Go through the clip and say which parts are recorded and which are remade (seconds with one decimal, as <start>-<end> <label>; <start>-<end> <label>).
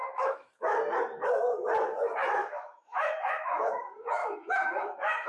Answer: 0.0-0.5 remade; 0.5-2.4 recorded; 2.4-3.7 remade; 3.7-4.2 recorded; 4.2-5.3 remade